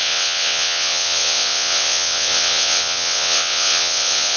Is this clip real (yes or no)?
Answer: no